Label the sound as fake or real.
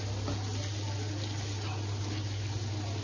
real